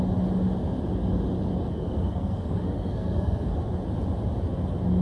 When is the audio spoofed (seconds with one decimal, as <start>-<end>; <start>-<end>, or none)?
1.7-3.7